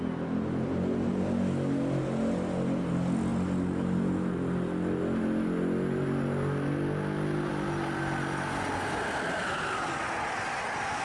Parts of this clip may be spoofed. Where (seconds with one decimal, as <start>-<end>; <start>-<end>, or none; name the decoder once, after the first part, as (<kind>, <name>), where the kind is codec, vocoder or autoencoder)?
none